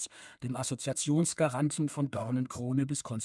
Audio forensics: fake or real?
fake